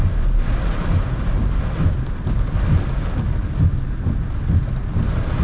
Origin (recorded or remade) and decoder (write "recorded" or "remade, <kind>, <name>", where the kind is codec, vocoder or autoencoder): recorded